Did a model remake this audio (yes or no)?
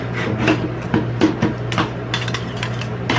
no